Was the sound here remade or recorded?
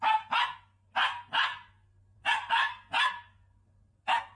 recorded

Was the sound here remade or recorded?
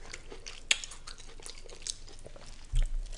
recorded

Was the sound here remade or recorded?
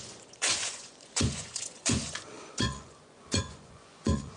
remade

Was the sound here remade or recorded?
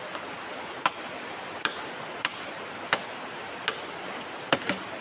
recorded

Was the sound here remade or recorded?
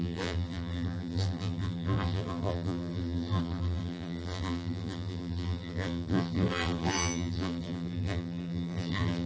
remade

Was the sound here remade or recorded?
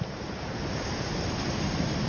recorded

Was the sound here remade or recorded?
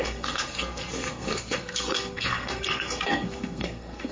remade